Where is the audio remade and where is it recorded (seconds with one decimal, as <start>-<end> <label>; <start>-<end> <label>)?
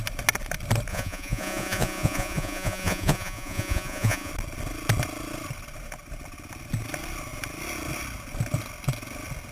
0.0-0.9 recorded; 0.9-4.3 remade; 4.3-9.5 recorded